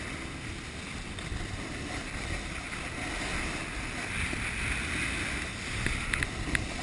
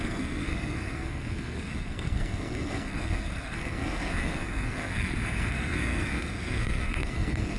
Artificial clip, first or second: second